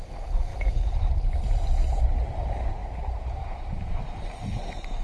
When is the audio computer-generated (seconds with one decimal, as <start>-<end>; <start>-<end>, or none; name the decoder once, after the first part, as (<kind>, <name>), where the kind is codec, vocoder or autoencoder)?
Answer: 0.5-1.1 (vocoder, Vocos)